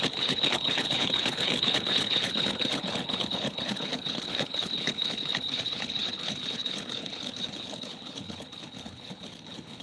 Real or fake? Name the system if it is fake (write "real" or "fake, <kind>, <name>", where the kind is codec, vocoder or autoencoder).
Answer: fake, codec, HILCodec